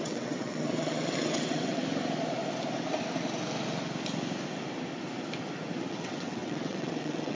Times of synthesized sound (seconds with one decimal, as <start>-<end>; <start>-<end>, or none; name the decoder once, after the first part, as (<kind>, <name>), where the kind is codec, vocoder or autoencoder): 0.0-1.8 (vocoder, WaveNeXt); 5.9-7.3